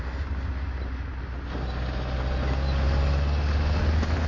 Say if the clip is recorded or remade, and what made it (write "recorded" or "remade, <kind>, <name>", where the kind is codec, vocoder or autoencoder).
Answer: recorded